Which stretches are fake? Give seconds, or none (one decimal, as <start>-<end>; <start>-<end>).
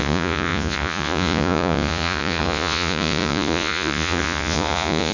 0.0-5.1